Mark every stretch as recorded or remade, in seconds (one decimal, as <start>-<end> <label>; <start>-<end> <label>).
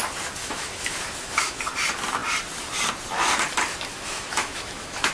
0.0-0.4 recorded; 0.4-1.6 remade; 1.6-3.9 recorded; 3.9-5.1 remade